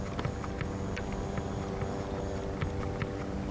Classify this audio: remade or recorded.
recorded